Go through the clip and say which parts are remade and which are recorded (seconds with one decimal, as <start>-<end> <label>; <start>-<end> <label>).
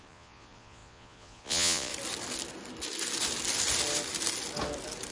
0.0-1.9 remade; 1.9-5.1 recorded